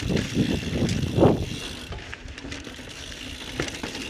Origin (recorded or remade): recorded